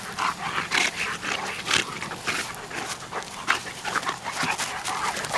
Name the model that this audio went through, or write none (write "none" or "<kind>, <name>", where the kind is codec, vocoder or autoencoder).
none